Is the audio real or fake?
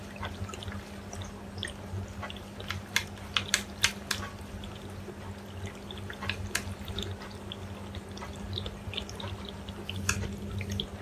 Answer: real